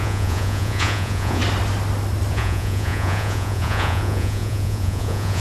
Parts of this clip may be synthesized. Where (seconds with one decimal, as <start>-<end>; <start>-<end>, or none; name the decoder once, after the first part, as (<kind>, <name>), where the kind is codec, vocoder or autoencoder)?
0.0-1.4 (vocoder, Vocos); 2.3-5.4